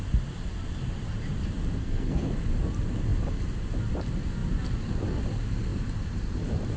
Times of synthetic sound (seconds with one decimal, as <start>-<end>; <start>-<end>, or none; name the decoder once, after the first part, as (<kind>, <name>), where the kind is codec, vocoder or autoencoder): 1.8-2.3 (codec, SNAC)